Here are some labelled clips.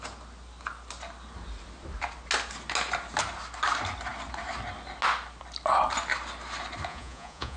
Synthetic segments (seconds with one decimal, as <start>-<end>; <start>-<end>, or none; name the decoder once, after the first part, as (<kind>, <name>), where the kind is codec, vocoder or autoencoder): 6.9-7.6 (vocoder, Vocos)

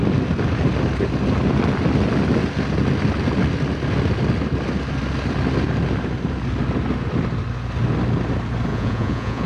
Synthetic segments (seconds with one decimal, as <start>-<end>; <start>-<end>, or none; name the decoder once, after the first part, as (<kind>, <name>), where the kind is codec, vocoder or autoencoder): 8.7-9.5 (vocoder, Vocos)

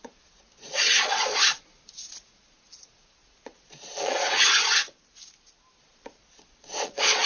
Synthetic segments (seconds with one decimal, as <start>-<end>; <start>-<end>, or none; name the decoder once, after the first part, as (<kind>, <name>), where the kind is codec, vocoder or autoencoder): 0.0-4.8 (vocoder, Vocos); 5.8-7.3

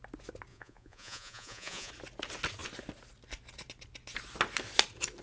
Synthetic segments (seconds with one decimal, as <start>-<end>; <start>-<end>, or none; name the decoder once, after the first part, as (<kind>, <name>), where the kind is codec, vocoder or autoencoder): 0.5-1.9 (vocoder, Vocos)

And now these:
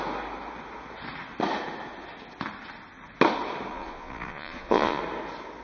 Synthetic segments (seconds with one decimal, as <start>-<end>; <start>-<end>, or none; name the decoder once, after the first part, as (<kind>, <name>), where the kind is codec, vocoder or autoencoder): 3.7-5.0 (vocoder, Vocos)

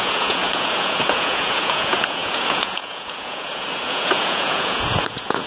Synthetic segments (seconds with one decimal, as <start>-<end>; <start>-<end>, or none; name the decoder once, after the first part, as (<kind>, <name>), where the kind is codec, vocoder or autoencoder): 0.0-5.5 (vocoder, Vocos)